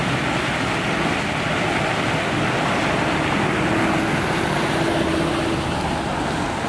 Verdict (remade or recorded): recorded